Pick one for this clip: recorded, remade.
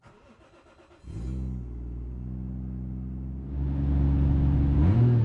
recorded